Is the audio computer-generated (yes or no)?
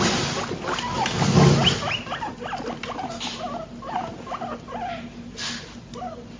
no